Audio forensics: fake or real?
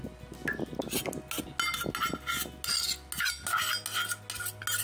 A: real